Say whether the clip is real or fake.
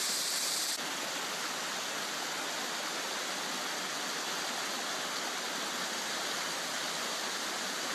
real